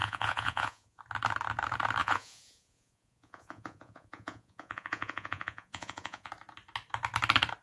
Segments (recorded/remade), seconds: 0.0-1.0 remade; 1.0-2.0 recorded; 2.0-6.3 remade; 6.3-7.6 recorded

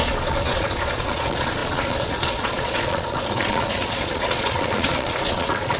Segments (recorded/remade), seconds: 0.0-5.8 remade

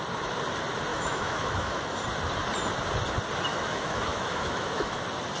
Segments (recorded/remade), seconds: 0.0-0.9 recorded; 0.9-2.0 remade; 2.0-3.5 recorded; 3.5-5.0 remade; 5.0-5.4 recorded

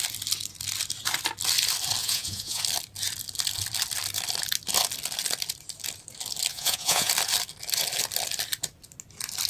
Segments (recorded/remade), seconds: 0.0-2.0 recorded; 2.0-2.6 remade; 2.6-6.5 recorded; 6.5-7.1 remade; 7.1-9.5 recorded

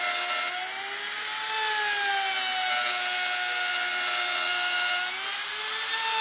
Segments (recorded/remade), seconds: 0.0-6.2 recorded

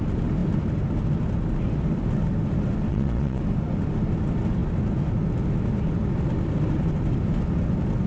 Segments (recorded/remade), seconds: 0.0-2.9 recorded; 2.9-3.4 remade; 3.4-8.1 recorded

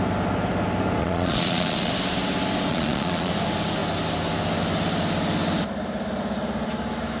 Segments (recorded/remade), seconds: 0.0-1.0 recorded; 1.0-1.9 remade; 1.9-2.7 recorded; 2.7-3.3 remade; 3.3-7.2 recorded

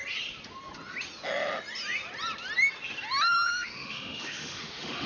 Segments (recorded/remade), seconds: 0.0-3.5 recorded; 3.5-5.1 remade